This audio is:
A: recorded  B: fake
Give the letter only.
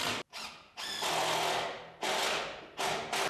A